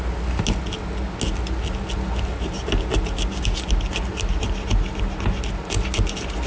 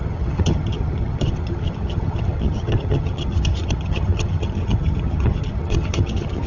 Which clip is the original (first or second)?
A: first